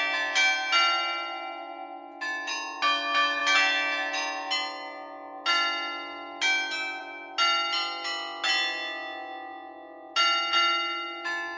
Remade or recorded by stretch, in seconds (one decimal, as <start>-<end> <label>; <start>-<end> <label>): 0.0-11.6 recorded